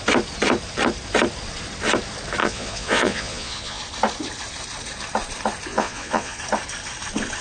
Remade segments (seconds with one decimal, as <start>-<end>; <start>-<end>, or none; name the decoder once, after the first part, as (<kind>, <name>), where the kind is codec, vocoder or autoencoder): 2.4-3.8 (vocoder, Vocos); 5.7-6.4